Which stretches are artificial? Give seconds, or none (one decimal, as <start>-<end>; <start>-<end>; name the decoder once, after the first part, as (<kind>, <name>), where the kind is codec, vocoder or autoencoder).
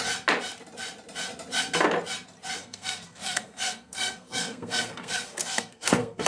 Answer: 2.6-6.3 (codec, SNAC)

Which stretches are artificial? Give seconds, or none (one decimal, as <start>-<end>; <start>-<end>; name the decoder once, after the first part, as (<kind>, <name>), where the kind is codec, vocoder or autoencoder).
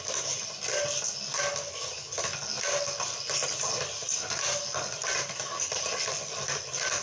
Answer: none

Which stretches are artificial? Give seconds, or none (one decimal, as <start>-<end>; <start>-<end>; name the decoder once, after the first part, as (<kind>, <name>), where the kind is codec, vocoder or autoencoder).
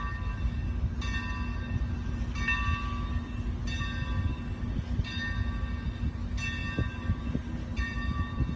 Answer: 7.7-8.6 (vocoder, BigVGAN v2)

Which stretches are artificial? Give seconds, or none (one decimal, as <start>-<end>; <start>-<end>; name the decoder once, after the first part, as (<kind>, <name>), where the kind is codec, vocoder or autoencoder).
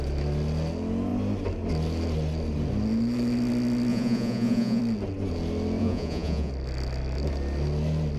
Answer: 3.9-4.8 (vocoder, Vocos); 5.8-6.5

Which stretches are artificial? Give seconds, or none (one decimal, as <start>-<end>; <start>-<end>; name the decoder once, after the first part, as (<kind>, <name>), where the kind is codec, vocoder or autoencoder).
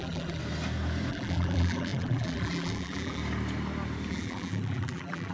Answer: 0.0-0.4 (vocoder, BigVGAN v2); 1.1-3.2; 4.1-5.3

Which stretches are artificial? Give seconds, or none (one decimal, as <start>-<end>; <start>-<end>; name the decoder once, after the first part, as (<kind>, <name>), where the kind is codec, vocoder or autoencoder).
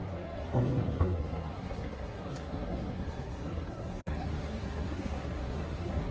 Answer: 0.0-6.1 (codec, SNAC)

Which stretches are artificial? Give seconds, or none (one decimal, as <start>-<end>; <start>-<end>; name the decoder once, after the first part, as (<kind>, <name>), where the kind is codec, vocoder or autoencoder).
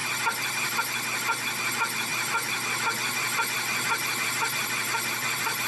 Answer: none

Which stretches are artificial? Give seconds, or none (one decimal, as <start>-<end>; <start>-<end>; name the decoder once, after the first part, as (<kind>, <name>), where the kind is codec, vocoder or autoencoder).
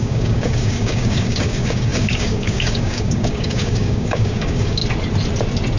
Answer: 0.0-4.8 (codec, DAC)